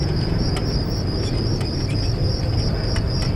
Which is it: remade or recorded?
remade